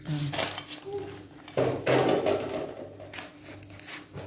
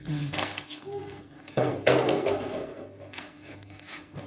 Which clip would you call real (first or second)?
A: first